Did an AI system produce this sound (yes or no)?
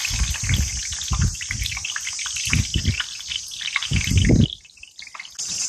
no